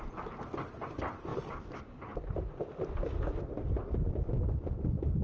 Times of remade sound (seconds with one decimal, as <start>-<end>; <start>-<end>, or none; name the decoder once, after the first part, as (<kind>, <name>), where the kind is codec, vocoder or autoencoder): 1.3-4.4 (vocoder, BigVGAN v2)